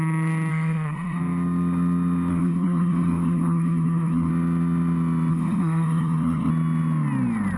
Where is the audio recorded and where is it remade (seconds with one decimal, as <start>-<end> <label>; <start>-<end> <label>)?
0.0-0.5 recorded; 0.5-1.2 remade; 1.2-2.3 recorded; 2.3-4.3 remade; 4.3-5.3 recorded; 5.3-6.5 remade; 6.5-7.6 recorded